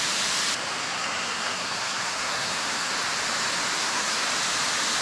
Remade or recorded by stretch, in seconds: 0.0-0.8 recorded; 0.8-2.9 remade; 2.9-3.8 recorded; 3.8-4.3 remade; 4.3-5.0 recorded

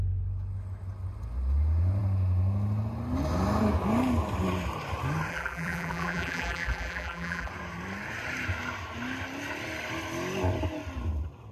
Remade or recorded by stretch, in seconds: 0.0-5.3 recorded; 5.3-7.5 remade; 7.5-11.5 recorded

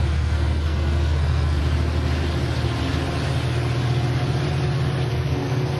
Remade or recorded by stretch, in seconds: 0.0-1.6 remade; 1.6-5.1 recorded; 5.1-5.8 remade

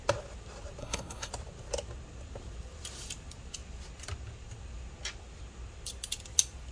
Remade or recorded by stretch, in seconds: 0.0-0.8 recorded; 0.8-1.3 remade; 1.3-6.7 recorded